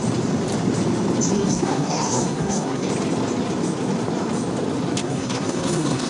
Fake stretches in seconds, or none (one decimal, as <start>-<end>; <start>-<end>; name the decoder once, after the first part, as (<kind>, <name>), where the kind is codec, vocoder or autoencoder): 1.3-2.9 (codec, SNAC); 5.0-6.1